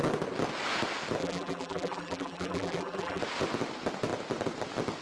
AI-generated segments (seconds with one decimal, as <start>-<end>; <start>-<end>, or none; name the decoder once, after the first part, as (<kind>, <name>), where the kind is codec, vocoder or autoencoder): 1.2-3.2 (vocoder, BigVGAN v2)